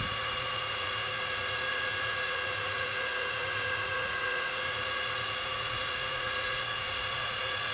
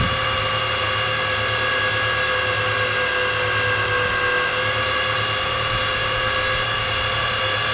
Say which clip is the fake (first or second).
first